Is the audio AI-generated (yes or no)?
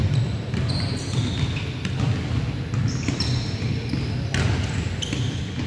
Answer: no